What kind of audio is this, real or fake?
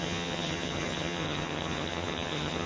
fake